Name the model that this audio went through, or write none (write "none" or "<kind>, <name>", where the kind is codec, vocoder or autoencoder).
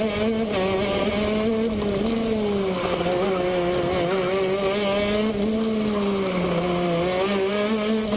none